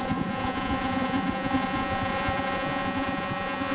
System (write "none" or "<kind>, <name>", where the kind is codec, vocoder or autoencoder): vocoder, Vocos